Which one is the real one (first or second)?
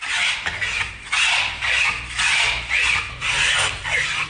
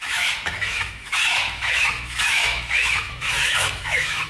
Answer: first